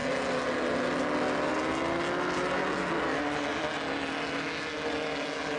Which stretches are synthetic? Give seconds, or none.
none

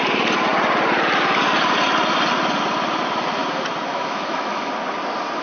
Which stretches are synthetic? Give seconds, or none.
3.9-4.7 (autoencoder, DAC-VAE)

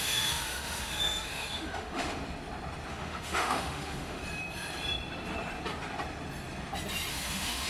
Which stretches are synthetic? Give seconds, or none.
0.0-2.2 (autoencoder, DAC-VAE); 2.9-4.2; 7.1-7.7

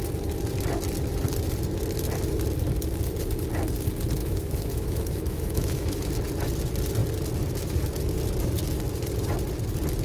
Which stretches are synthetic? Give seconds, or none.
4.2-6.1 (autoencoder, DAC-VAE)